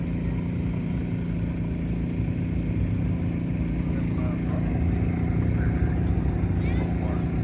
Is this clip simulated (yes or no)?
no